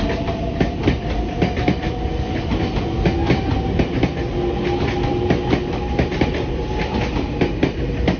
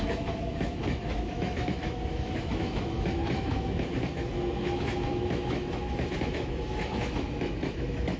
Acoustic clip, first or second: first